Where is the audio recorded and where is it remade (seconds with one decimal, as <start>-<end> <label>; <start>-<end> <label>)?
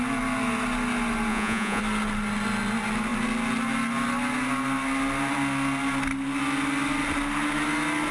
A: 0.0-1.3 recorded; 1.3-1.8 remade; 1.8-8.1 recorded